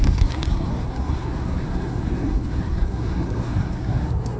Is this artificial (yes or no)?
yes